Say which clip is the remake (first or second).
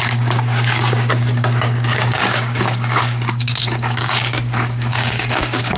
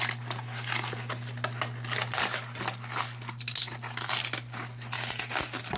first